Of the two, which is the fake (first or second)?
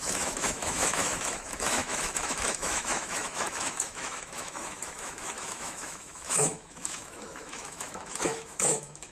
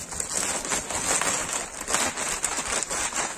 first